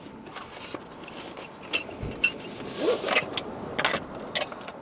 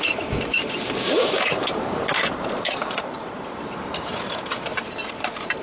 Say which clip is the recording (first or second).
first